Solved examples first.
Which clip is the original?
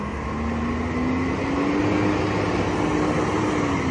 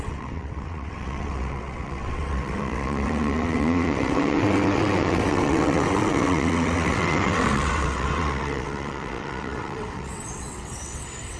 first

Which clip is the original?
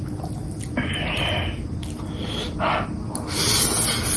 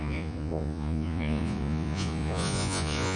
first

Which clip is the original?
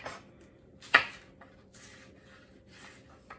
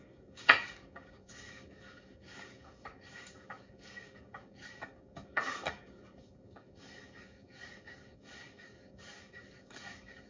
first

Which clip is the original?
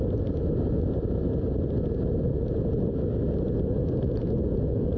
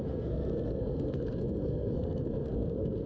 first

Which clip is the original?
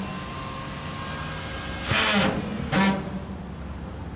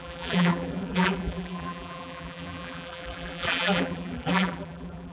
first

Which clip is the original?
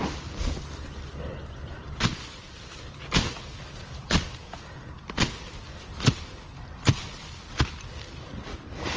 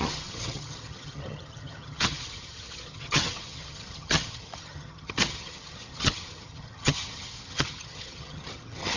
first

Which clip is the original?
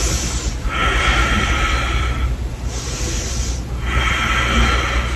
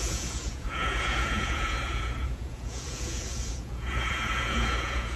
first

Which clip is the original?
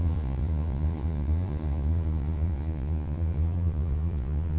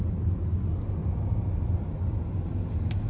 second